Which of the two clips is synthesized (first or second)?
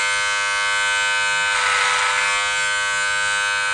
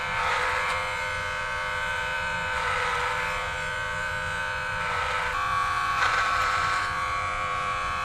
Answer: second